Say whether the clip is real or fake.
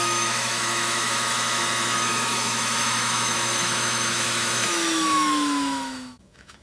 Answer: fake